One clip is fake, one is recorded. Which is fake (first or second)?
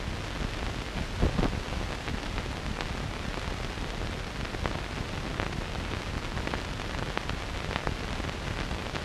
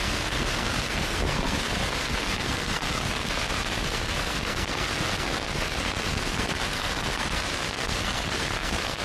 second